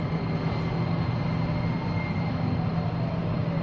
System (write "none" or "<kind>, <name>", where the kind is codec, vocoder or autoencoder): none